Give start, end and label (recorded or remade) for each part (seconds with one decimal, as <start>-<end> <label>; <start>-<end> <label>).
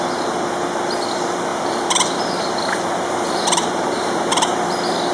0.0-1.5 recorded; 1.5-4.6 remade; 4.6-5.1 recorded